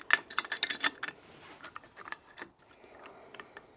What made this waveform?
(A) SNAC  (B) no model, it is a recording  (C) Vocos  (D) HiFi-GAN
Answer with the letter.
B